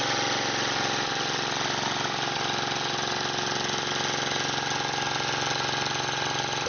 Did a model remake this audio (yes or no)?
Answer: no